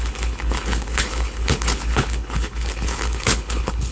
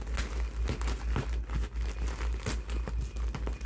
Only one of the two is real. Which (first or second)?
second